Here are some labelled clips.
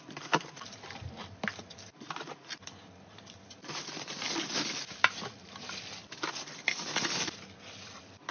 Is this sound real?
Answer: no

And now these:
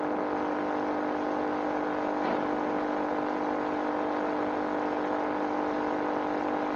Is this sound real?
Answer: yes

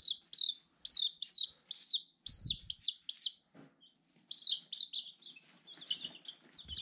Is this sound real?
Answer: yes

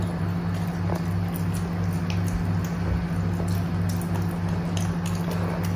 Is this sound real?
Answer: yes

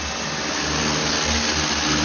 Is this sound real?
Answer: yes